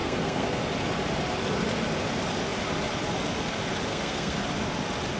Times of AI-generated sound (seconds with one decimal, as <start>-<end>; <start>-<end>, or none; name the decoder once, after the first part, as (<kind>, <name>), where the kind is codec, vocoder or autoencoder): 0.0-0.7 (codec, SNAC); 3.9-4.4